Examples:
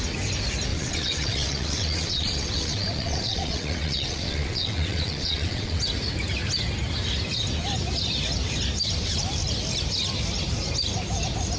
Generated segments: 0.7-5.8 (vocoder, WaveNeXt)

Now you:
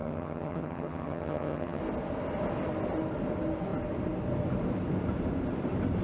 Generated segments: 0.0-1.8 (vocoder, HiFi-GAN)

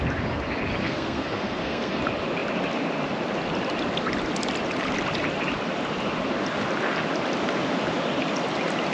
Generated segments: 0.8-2.0 (codec, SNAC)